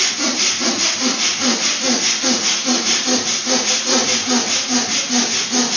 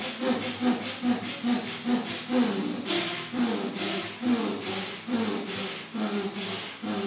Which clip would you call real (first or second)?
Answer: second